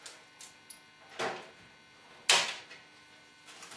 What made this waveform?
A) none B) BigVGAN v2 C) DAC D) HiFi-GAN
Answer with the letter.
A